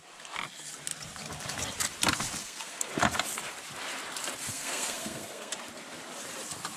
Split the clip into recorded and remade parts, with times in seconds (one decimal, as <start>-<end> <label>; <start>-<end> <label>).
0.0-2.4 recorded; 2.4-2.9 remade; 2.9-4.5 recorded; 4.5-5.5 remade; 5.5-6.8 recorded